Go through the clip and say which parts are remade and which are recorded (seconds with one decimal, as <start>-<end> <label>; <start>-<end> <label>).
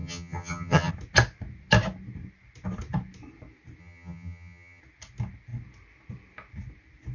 0.0-0.9 remade; 0.9-3.8 recorded; 3.8-4.8 remade; 4.8-7.1 recorded